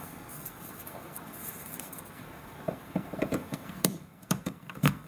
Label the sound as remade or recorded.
remade